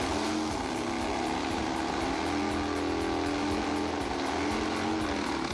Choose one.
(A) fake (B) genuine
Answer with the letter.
B